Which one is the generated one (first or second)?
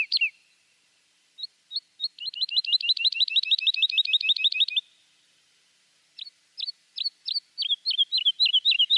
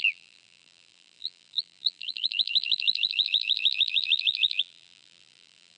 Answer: second